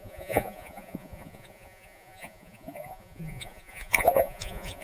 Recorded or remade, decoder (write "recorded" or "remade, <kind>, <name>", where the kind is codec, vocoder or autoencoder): remade, vocoder, Vocos